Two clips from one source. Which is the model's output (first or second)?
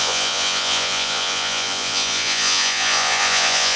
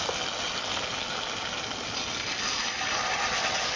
first